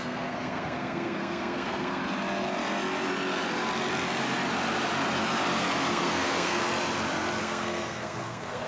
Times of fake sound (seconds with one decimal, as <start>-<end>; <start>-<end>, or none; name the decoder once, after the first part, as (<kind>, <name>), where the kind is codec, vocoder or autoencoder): 0.0-2.0 (codec, SNAC); 5.9-6.6; 7.4-8.7